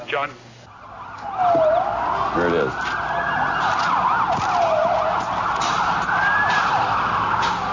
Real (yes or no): yes